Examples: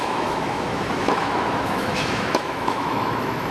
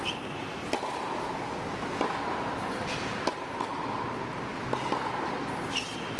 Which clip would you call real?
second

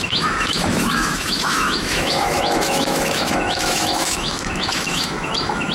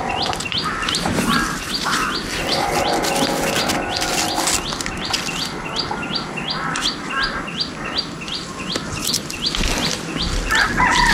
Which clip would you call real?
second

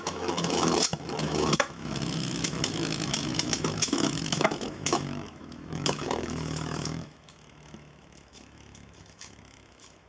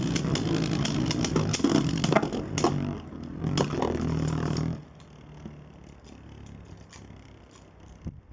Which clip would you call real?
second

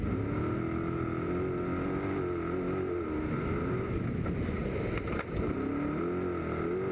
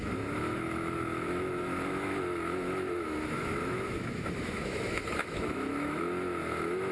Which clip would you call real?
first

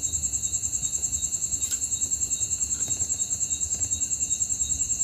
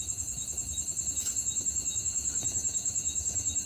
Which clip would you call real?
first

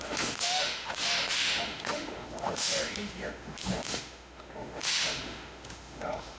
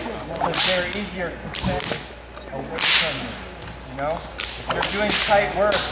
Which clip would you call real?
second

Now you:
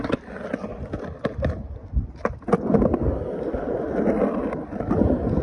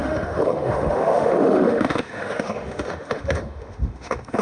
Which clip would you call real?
first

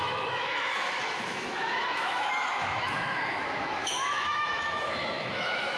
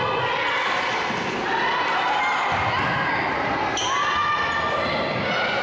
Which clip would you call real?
second